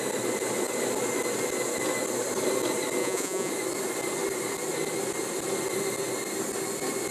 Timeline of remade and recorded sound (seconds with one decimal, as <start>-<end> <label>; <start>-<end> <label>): 0.0-3.0 recorded; 3.0-3.5 remade; 3.5-7.1 recorded